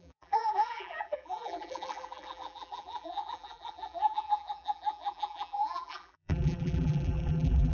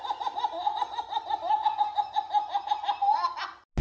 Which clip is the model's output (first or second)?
first